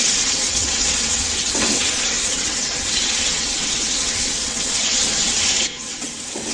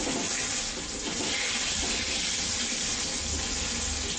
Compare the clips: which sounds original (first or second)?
second